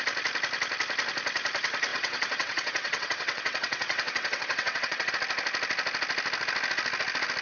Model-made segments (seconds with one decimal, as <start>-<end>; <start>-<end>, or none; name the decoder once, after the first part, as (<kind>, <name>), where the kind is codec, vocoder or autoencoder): 1.9-5.1 (vocoder, WaveNeXt)